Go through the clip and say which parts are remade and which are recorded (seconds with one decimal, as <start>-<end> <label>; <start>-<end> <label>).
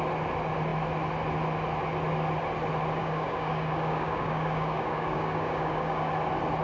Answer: 0.0-3.0 recorded; 3.0-6.1 remade; 6.1-6.6 recorded